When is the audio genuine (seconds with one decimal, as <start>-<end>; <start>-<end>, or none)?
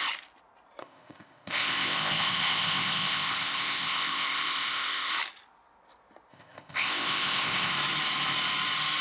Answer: 0.0-0.8; 5.1-6.3; 7.7-9.0